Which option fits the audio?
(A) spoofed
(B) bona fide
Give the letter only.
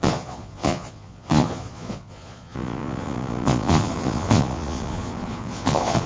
A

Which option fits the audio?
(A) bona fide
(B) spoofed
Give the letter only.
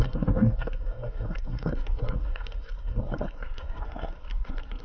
B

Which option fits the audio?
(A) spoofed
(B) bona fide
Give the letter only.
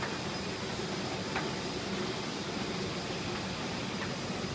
B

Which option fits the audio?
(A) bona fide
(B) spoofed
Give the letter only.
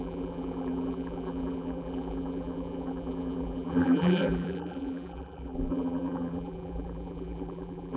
B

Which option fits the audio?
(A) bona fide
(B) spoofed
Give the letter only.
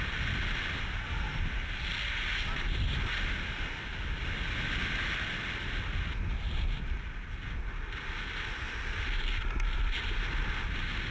A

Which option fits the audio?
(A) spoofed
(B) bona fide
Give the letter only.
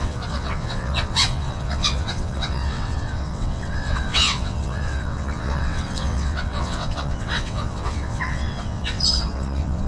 A